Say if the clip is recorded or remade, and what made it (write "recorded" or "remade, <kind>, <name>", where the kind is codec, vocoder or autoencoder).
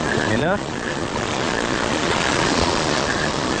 remade, vocoder, Vocos